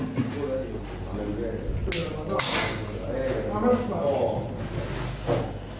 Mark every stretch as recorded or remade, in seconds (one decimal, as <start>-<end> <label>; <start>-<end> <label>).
0.0-5.8 recorded